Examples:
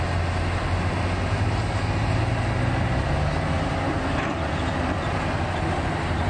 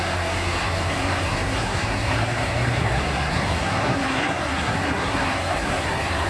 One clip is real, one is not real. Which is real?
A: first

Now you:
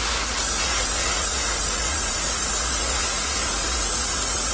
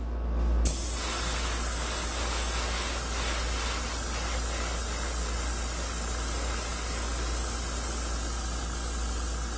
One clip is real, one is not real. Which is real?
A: second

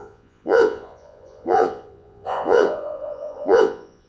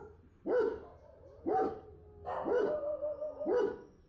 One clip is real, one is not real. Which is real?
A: second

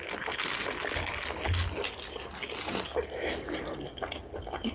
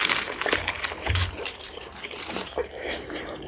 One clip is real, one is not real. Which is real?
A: first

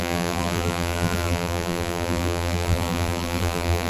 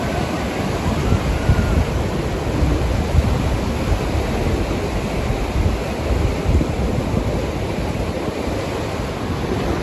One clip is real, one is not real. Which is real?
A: second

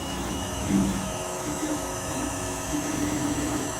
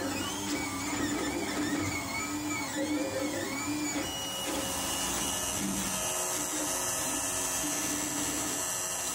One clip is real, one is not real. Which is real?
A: second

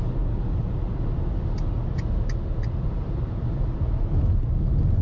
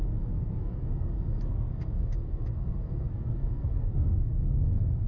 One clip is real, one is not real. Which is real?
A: first